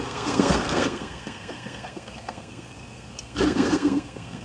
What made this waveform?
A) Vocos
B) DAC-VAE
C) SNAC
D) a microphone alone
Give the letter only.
C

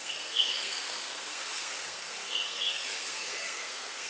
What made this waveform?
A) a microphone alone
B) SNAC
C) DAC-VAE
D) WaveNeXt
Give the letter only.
B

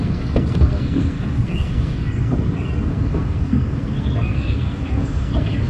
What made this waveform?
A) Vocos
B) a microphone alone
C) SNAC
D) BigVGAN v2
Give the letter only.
C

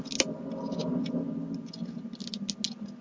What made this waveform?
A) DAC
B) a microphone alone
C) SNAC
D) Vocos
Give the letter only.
B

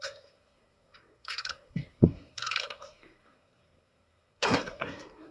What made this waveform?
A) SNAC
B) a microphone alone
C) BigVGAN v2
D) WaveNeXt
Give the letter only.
A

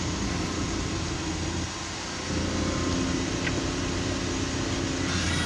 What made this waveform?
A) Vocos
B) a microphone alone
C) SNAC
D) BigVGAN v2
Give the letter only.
B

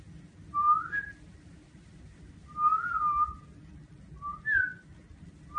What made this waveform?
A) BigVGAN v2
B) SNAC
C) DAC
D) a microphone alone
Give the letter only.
D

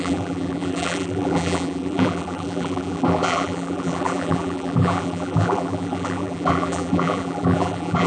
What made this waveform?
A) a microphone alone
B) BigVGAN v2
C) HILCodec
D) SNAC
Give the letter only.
B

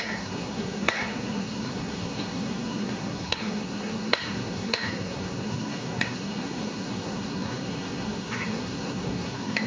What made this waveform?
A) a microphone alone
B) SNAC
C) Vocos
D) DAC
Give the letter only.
B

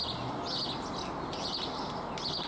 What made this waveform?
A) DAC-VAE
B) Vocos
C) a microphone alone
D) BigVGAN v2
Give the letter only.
C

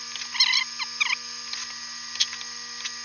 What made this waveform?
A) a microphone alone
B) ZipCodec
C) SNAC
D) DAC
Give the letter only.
A